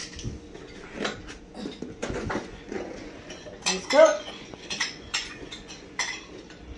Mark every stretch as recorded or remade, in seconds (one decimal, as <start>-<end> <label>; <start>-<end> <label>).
0.0-2.0 recorded; 2.0-6.1 remade; 6.1-6.8 recorded